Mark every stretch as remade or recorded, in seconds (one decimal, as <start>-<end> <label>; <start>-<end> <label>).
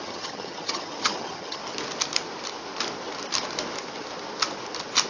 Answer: 0.0-1.6 remade; 1.6-5.1 recorded